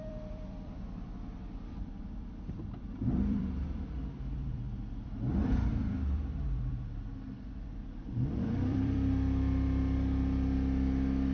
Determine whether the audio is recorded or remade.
remade